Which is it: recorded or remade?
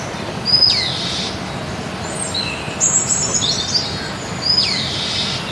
recorded